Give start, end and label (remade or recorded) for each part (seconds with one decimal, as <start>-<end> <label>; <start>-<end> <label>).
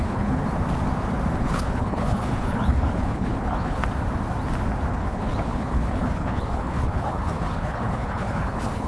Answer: 0.0-0.4 remade; 0.4-1.4 recorded; 1.4-3.8 remade; 3.8-4.9 recorded; 4.9-8.9 remade